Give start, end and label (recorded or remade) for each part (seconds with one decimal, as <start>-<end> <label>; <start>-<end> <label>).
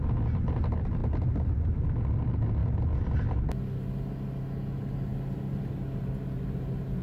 0.0-7.0 recorded